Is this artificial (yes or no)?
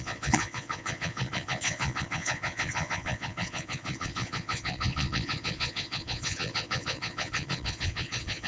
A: yes